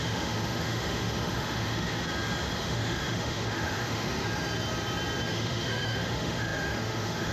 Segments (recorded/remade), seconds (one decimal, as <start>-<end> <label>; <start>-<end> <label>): 0.0-1.9 remade; 1.9-2.6 recorded; 2.6-4.2 remade; 4.2-5.3 recorded; 5.3-7.3 remade

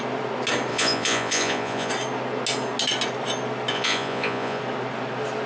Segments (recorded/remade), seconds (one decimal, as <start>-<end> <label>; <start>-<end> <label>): 0.0-0.7 recorded; 0.7-1.9 remade; 1.9-3.7 recorded; 3.7-4.6 remade; 4.6-5.5 recorded

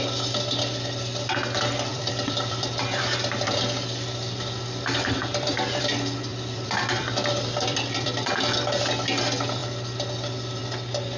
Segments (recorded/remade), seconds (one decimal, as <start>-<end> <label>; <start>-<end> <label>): 0.0-1.9 recorded; 1.9-3.6 remade; 3.6-5.2 recorded; 5.2-5.8 remade; 5.8-6.3 recorded; 6.3-8.3 remade; 8.3-11.2 recorded

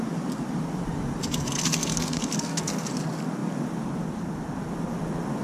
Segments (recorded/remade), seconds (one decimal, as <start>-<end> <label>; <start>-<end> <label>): 0.0-1.2 recorded; 1.2-2.9 remade; 2.9-5.4 recorded